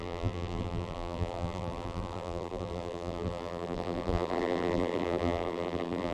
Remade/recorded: remade